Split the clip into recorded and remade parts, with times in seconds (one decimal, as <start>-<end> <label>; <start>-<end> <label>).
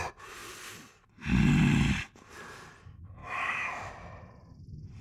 0.0-3.2 recorded; 3.2-3.9 remade; 3.9-5.0 recorded